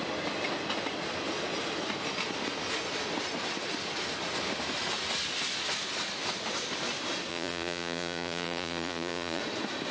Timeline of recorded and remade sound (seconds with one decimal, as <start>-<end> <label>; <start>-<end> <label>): 0.0-7.3 recorded; 7.3-9.4 remade; 9.4-9.9 recorded